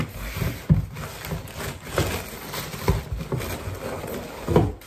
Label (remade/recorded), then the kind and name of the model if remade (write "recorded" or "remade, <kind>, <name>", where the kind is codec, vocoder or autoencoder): recorded